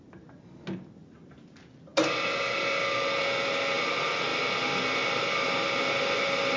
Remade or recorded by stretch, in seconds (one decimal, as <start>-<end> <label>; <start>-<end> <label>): 0.0-6.6 recorded